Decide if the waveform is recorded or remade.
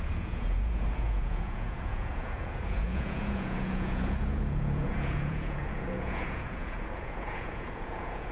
remade